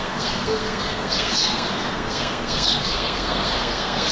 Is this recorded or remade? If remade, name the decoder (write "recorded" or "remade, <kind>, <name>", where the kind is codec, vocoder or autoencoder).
remade, codec, SNAC